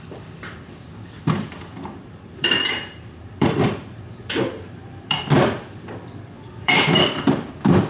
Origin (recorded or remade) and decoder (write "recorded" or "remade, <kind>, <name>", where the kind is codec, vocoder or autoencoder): remade, vocoder, BigVGAN v2